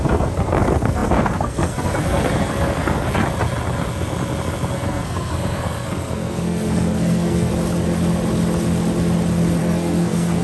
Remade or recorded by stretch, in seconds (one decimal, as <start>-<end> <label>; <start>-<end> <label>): 0.0-3.2 remade; 3.2-4.7 recorded; 4.7-7.5 remade; 7.5-9.6 recorded; 9.6-10.4 remade